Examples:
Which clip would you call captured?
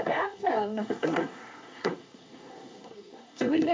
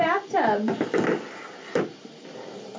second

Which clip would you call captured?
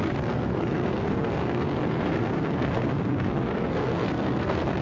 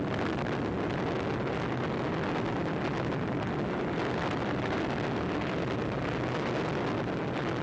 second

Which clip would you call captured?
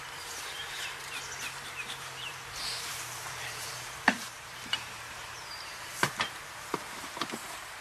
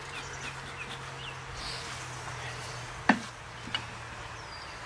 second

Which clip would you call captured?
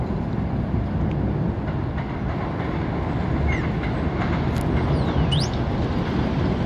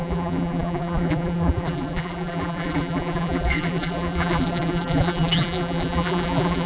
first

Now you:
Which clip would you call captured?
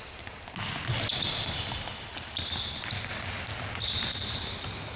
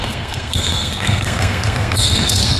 first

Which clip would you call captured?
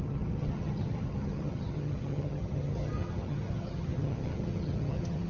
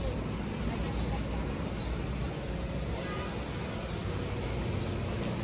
second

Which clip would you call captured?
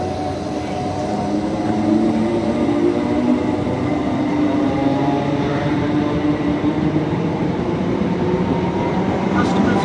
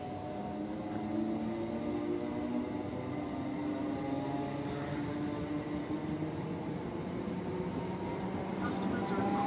second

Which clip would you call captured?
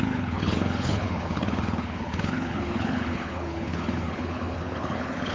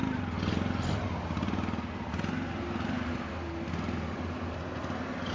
second